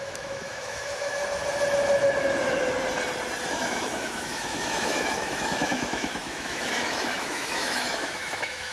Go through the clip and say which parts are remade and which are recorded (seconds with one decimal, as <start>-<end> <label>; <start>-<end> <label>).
0.0-1.2 remade; 1.2-3.5 recorded; 3.5-8.7 remade

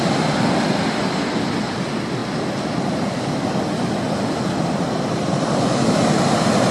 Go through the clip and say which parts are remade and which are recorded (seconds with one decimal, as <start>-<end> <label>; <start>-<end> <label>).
0.0-6.7 recorded